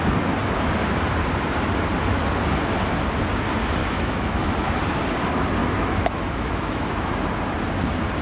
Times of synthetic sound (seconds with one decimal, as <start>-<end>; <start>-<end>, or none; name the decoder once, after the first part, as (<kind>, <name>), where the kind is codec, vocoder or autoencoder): 3.8-4.5 (autoencoder, DAC-VAE); 5.6-7.1